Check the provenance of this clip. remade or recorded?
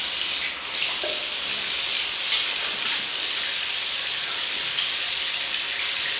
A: recorded